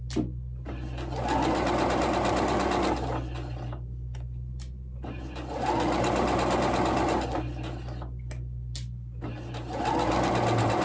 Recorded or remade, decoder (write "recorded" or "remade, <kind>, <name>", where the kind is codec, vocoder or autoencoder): recorded